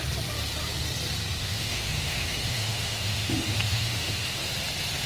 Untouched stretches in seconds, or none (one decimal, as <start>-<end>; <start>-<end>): 0.0-1.4; 4.5-5.1